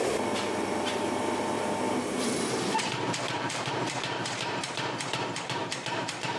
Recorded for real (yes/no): no